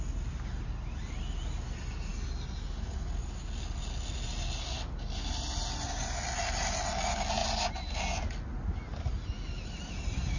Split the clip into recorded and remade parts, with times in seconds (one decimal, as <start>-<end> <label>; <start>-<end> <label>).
0.0-10.4 recorded